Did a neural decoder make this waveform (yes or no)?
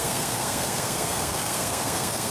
yes